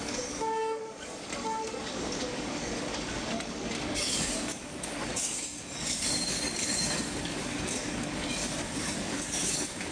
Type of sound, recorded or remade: remade